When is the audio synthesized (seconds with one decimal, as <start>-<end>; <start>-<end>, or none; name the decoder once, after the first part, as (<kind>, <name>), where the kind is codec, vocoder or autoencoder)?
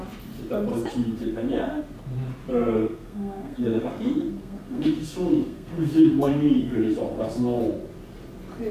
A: 0.7-1.8 (codec, SNAC); 2.5-7.6